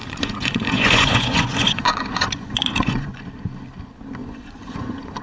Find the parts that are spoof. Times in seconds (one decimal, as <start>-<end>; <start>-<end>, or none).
0.0-3.1; 4.2-5.2